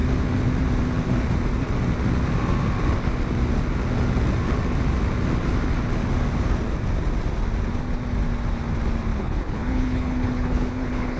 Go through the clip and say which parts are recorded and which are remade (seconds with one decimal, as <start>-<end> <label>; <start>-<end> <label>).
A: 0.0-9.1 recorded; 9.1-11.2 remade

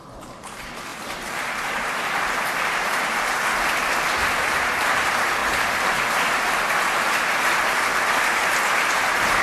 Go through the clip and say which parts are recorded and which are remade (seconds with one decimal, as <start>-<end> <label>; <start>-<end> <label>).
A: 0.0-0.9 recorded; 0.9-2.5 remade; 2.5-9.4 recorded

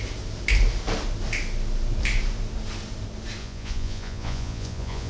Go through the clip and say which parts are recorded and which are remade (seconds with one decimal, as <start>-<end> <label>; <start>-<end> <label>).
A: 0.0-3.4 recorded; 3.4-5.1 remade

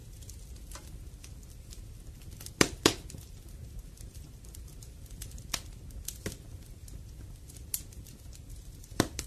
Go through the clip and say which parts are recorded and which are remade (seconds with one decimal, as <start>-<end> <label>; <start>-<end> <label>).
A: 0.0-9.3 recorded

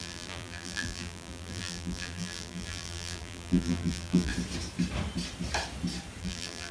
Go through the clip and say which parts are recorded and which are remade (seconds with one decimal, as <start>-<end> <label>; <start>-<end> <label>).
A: 0.0-4.3 remade; 4.3-6.2 recorded; 6.2-6.7 remade

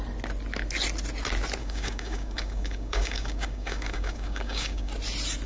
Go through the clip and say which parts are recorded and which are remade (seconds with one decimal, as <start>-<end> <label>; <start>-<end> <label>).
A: 0.0-1.6 recorded; 1.6-4.9 remade; 4.9-5.5 recorded

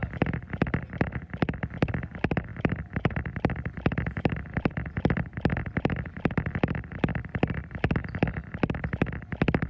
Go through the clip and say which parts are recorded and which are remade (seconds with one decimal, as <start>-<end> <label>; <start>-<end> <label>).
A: 0.0-2.5 recorded; 2.5-6.5 remade; 6.5-9.7 recorded

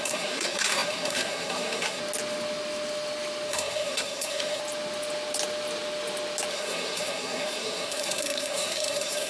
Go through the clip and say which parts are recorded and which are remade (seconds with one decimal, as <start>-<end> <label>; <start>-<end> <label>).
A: 0.0-2.0 remade; 2.0-3.5 recorded; 3.5-4.6 remade; 4.6-6.5 recorded; 6.5-9.3 remade